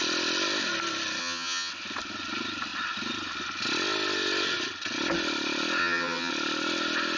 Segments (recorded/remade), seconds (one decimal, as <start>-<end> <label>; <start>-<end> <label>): 0.0-1.2 recorded; 1.2-1.7 remade; 1.7-5.8 recorded; 5.8-6.3 remade; 6.3-7.2 recorded